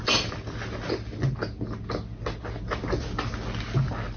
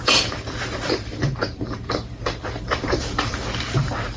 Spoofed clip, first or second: second